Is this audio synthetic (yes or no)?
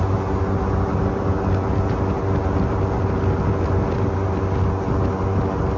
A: no